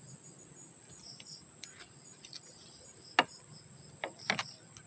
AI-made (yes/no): no